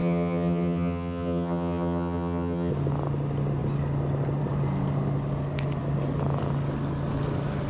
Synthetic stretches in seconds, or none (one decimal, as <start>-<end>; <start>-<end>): 0.0-2.7